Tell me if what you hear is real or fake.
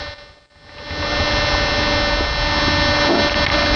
real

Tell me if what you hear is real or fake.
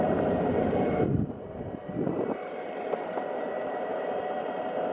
fake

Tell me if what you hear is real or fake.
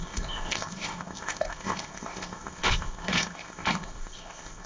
fake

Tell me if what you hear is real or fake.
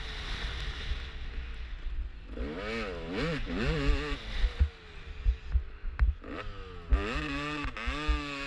real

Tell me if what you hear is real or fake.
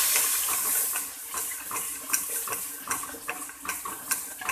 real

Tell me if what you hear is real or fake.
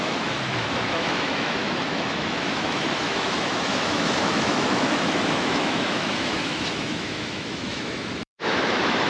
fake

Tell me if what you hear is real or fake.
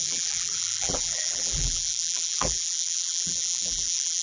fake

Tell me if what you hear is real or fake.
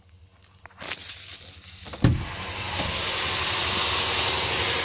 real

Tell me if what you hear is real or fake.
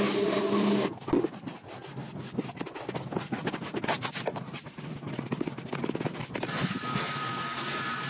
real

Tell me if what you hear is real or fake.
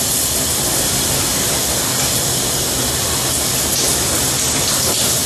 fake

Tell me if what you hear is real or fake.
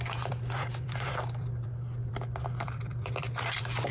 fake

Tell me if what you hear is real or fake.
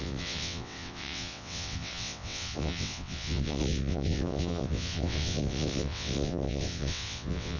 fake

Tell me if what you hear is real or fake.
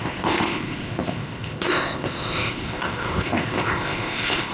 fake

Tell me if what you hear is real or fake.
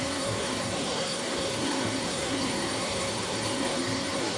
fake